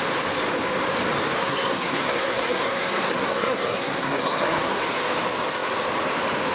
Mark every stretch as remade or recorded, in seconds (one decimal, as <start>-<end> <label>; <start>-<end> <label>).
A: 0.0-1.4 recorded; 1.4-4.8 remade; 4.8-6.5 recorded